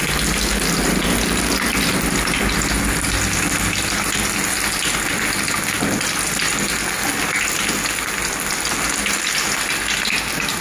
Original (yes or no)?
yes